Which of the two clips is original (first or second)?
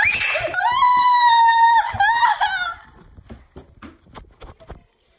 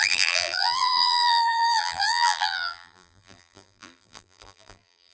first